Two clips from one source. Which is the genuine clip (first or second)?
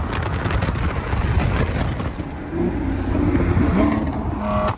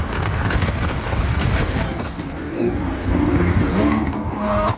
first